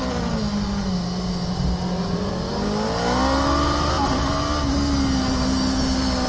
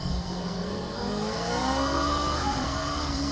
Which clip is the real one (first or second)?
first